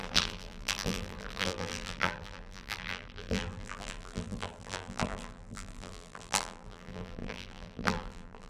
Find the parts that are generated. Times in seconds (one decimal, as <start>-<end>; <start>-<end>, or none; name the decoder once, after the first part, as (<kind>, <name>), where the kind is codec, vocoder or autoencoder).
0.0-8.5 (vocoder, BigVGAN v2)